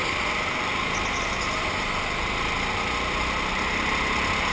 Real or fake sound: real